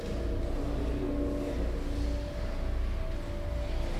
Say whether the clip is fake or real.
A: real